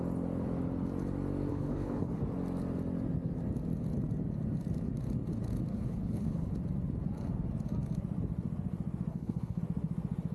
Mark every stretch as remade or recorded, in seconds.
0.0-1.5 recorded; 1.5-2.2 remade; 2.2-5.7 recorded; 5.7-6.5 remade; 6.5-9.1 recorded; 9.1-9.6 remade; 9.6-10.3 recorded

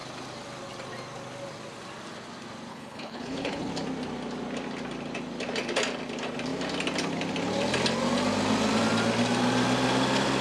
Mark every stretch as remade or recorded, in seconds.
0.0-2.7 recorded; 2.7-3.7 remade; 3.7-10.4 recorded

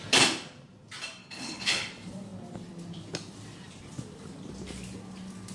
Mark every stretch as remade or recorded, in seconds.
0.0-1.2 recorded; 1.2-1.9 remade; 1.9-5.5 recorded

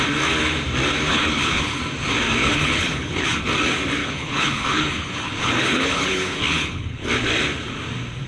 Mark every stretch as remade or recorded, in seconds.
0.0-1.1 recorded; 1.1-1.8 remade; 1.8-2.4 recorded; 2.4-3.4 remade; 3.4-4.0 recorded; 4.0-7.1 remade; 7.1-8.3 recorded

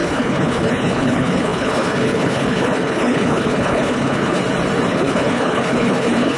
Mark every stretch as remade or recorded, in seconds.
0.0-4.4 remade; 4.4-4.9 recorded; 4.9-6.4 remade

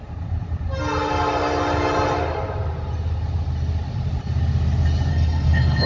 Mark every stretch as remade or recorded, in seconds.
0.0-5.1 recorded; 5.1-5.9 remade

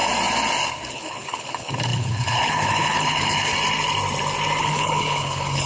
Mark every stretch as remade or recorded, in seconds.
0.0-0.9 recorded; 0.9-3.5 remade; 3.5-4.6 recorded; 4.6-5.7 remade

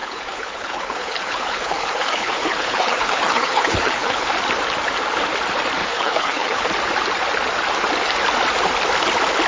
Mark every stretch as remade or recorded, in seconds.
0.0-4.3 remade; 4.3-5.8 recorded; 5.8-6.7 remade; 6.7-9.5 recorded